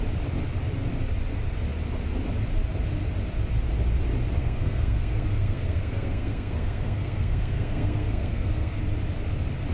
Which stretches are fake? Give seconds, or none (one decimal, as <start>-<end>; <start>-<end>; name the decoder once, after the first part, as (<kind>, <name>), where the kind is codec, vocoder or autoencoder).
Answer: 4.4-8.8 (codec, SNAC)